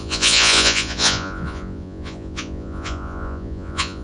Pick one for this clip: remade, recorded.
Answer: remade